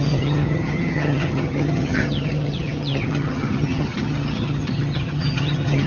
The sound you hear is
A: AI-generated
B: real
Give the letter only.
A